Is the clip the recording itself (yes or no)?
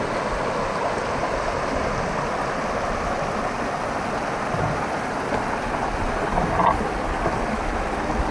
yes